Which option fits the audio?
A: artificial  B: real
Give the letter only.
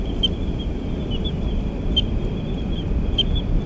B